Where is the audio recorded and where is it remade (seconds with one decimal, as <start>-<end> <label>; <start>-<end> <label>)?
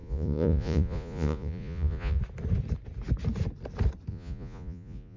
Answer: 0.0-2.2 remade; 2.2-4.1 recorded; 4.1-5.2 remade